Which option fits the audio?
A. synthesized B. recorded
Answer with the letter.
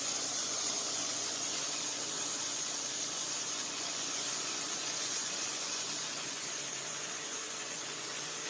A